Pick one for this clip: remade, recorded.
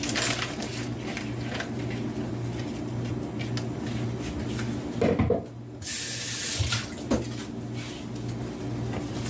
recorded